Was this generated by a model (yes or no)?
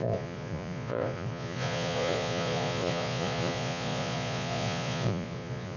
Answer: yes